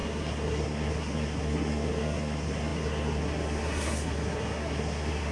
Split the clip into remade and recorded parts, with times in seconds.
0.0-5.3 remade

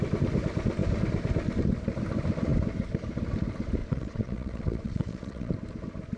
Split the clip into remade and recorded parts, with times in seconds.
0.0-3.8 recorded; 3.8-5.5 remade; 5.5-6.2 recorded

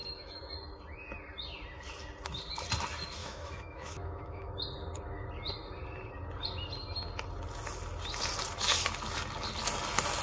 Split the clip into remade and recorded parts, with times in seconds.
0.0-0.5 remade; 0.5-3.2 recorded; 3.2-4.5 remade; 4.5-10.2 recorded